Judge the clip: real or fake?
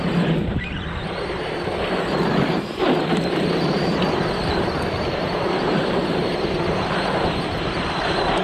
fake